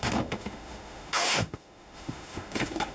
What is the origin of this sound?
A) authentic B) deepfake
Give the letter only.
B